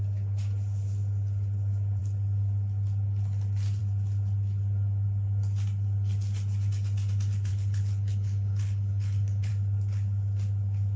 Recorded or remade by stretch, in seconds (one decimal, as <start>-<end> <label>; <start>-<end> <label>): 0.0-7.5 recorded; 7.5-9.5 remade; 9.5-11.0 recorded